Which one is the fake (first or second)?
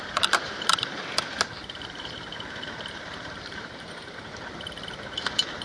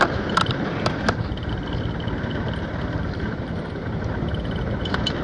first